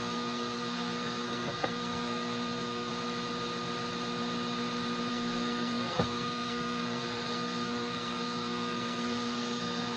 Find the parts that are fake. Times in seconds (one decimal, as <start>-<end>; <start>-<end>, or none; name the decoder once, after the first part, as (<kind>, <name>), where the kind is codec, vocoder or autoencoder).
0.0-2.9 (codec, SNAC); 5.1-10.0